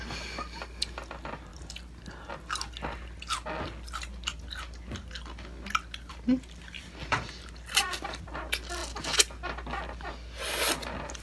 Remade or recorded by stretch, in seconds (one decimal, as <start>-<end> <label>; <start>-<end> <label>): 0.0-11.2 recorded